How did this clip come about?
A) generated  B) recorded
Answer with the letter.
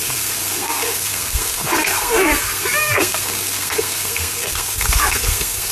A